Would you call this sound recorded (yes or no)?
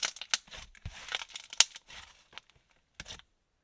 yes